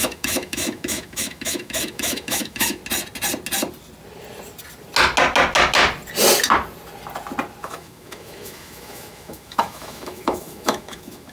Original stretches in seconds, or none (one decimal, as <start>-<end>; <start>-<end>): 2.8-7.6